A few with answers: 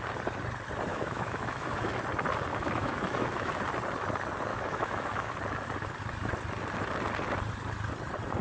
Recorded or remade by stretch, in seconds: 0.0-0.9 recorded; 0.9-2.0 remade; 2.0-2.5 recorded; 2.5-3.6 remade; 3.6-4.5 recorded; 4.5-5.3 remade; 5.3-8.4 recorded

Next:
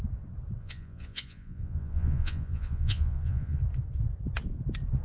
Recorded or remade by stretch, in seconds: 0.0-0.6 recorded; 0.6-3.6 remade; 3.6-5.0 recorded

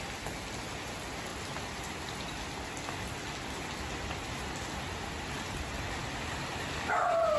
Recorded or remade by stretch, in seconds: 0.0-7.4 recorded

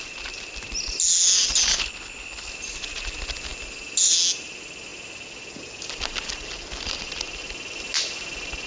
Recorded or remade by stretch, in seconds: 0.0-1.7 recorded; 1.7-2.5 remade; 2.5-8.7 recorded

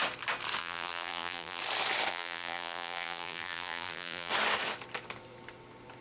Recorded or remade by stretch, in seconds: 0.0-0.6 recorded; 0.6-1.6 remade; 1.6-2.1 recorded; 2.1-4.3 remade; 4.3-6.0 recorded

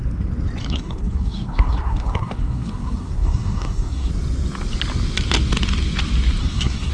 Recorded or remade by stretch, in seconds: 0.0-0.6 recorded; 0.6-4.1 remade; 4.1-6.4 recorded; 6.4-6.9 remade

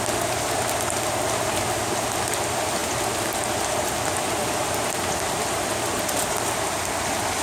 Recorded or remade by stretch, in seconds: 0.0-7.4 recorded